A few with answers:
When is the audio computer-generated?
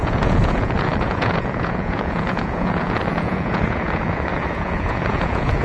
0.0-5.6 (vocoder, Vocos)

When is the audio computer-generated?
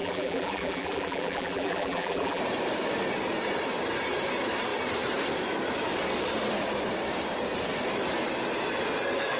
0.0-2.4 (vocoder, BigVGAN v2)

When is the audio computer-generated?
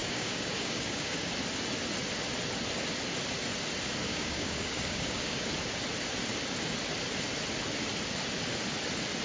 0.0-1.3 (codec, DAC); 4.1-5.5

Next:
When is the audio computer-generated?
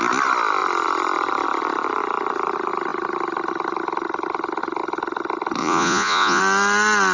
5.6-6.4 (vocoder, Vocos)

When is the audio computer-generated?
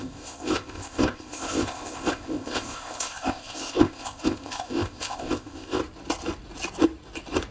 0.0-5.8 (codec, ZipCodec)